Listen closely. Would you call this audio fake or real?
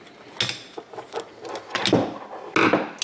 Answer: real